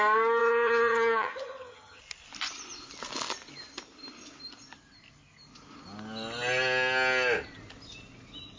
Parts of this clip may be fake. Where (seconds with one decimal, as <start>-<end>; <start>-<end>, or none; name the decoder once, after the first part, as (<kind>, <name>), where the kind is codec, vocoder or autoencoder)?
0.4-2.0 (vocoder, HiFi-GAN)